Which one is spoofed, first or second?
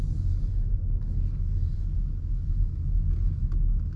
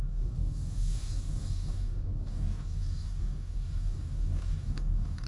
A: second